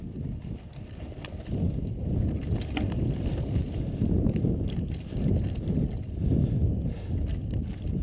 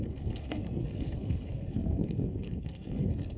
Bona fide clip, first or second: first